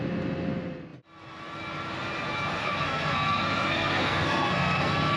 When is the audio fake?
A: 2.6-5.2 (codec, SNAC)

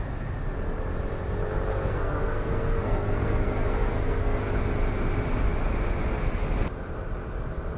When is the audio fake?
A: 1.7-4.4 (codec, SNAC)

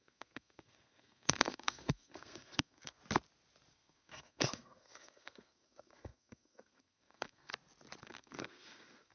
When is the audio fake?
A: 0.0-3.0 (codec, SNAC); 3.7-7.5; 8.0-9.1

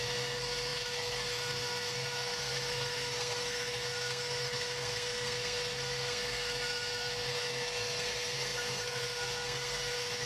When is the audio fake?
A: 0.0-10.3 (codec, SNAC)

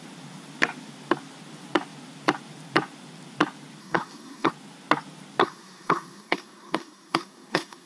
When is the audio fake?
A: 3.8-4.5 (codec, SNAC); 5.4-7.9

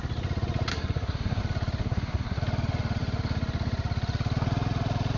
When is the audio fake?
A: 0.7-1.4 (codec, SNAC); 1.8-2.4

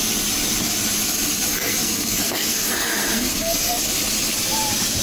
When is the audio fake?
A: 1.5-3.8 (codec, SNAC)

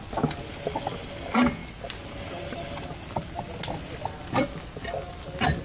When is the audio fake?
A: none